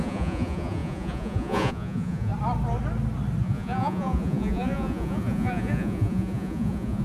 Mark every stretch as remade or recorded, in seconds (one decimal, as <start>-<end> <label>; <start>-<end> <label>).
0.0-2.3 remade; 2.3-3.4 recorded; 3.4-7.0 remade